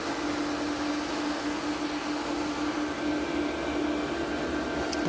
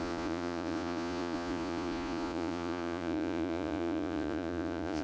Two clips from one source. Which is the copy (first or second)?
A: second